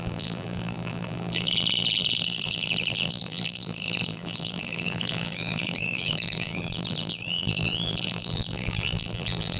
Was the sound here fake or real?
fake